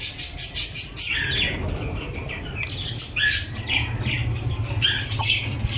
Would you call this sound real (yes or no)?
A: yes